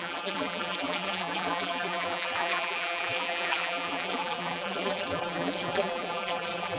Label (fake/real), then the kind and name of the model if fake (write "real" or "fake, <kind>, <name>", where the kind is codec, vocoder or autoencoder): fake, vocoder, BigVGAN v2